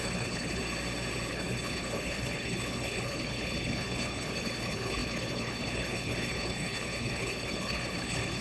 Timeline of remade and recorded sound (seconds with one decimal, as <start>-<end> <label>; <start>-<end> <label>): 0.0-0.6 remade; 0.6-1.3 recorded; 1.3-8.4 remade